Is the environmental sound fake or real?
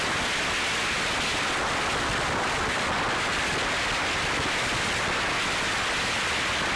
real